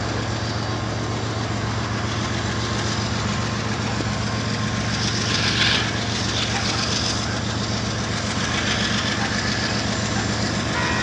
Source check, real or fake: real